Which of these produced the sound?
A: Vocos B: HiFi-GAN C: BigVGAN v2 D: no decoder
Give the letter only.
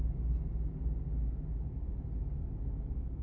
D